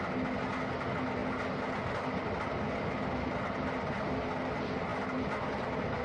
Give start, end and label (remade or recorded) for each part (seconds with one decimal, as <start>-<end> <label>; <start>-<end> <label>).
0.0-6.0 recorded

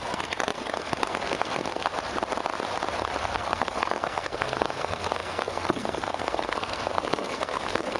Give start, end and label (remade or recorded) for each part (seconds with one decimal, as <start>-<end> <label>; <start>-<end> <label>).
0.0-1.9 remade; 1.9-3.2 recorded; 3.2-8.0 remade

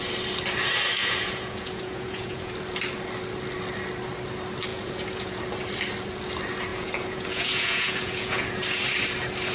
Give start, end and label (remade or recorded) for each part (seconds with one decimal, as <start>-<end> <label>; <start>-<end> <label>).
0.0-1.0 recorded; 1.0-2.5 remade; 2.5-4.7 recorded; 4.7-5.4 remade; 5.4-6.7 recorded; 6.7-8.6 remade; 8.6-9.5 recorded

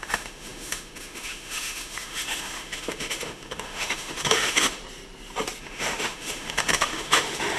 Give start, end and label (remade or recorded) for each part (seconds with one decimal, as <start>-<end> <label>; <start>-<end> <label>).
0.0-4.8 remade; 4.8-5.6 recorded; 5.6-7.6 remade

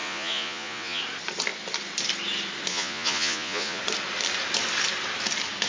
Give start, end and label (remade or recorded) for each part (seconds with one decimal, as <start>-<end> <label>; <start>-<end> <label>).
0.0-1.0 remade; 1.0-2.7 recorded; 2.7-3.8 remade; 3.8-5.7 recorded

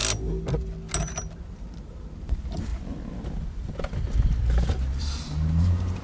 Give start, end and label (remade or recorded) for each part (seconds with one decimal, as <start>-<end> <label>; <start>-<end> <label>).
0.0-1.4 recorded; 1.4-2.7 remade; 2.7-5.0 recorded; 5.0-6.0 remade

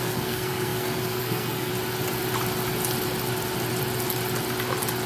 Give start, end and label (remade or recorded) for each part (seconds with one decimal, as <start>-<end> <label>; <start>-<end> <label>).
0.0-1.7 remade; 1.7-5.1 recorded